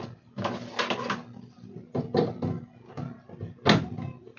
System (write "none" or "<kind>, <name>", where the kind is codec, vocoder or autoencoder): none